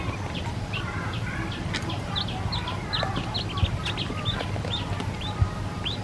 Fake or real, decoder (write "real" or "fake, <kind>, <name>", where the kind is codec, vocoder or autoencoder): real